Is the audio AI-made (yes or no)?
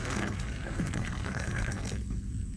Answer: yes